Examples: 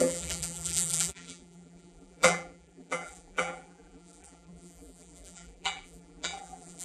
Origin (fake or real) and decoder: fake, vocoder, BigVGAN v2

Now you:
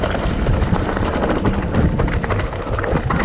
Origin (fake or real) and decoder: fake, vocoder, BigVGAN v2